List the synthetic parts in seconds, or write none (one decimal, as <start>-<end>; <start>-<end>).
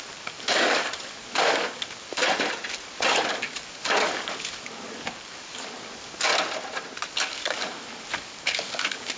0.0-2.2; 3.1-6.3; 7.1-9.2